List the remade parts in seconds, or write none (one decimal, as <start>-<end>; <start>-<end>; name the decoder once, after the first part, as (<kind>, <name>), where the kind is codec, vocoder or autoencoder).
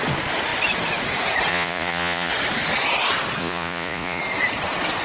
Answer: 1.5-2.3 (vocoder, Vocos); 3.4-4.2